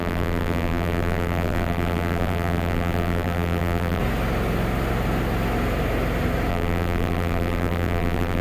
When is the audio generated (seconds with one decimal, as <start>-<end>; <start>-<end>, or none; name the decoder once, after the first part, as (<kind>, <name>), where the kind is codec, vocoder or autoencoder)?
0.0-4.0 (vocoder, BigVGAN v2); 6.5-8.4